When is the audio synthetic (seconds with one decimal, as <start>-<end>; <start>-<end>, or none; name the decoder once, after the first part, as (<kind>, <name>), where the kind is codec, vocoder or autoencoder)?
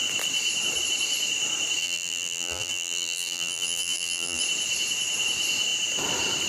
1.8-4.4 (vocoder, BigVGAN v2)